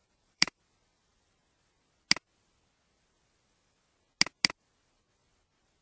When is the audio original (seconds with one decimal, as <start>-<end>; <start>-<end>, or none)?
0.6-5.8